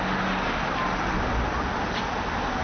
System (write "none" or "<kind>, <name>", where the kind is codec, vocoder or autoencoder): none